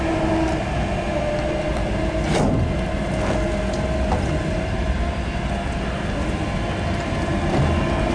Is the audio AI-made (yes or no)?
no